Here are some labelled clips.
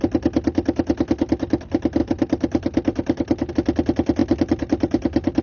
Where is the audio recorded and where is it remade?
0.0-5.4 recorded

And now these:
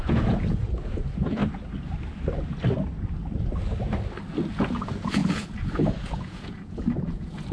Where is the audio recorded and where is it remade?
0.0-1.4 remade; 1.4-4.5 recorded; 4.5-7.5 remade